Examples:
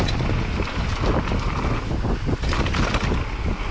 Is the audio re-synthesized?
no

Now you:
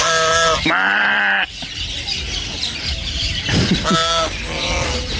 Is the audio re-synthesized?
no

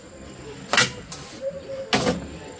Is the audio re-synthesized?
no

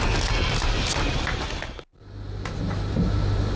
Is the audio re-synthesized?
no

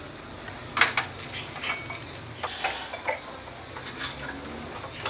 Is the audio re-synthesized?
no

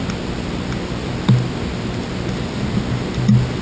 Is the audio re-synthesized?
no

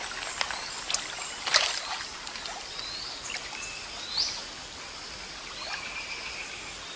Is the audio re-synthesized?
no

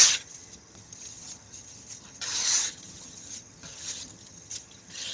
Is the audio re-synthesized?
yes